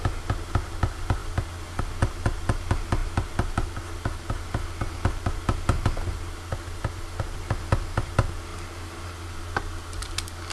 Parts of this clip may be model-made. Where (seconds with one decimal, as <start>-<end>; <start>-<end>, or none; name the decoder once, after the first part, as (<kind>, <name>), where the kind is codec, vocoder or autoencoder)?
none